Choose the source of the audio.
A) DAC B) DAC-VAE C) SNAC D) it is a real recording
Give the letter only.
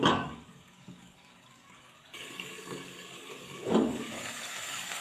A